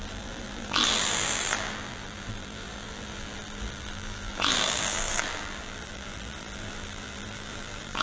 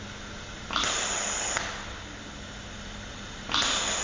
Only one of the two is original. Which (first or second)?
second